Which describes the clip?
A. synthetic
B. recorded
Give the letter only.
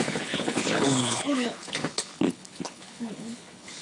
A